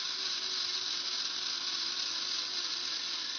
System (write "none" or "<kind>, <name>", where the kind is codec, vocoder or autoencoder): none